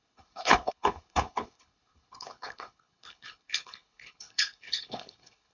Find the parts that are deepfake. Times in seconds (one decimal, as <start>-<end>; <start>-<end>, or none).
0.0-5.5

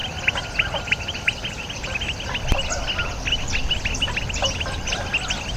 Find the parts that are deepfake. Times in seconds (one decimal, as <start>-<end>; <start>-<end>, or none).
none

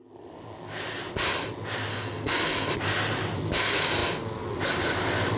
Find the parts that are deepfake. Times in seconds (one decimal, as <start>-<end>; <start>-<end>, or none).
1.9-2.7